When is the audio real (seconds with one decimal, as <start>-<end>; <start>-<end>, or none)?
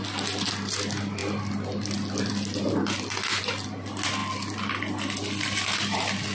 0.0-6.3